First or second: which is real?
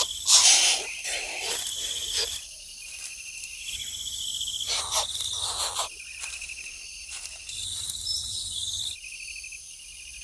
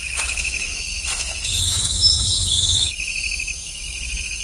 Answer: first